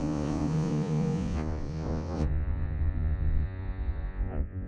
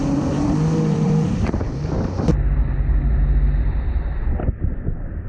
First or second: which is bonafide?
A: second